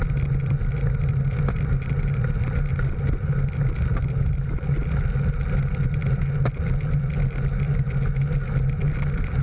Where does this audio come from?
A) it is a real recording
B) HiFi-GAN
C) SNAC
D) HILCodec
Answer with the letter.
A